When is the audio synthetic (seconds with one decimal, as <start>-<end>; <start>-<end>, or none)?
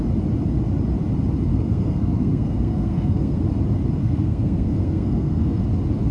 1.5-3.4; 4.0-5.6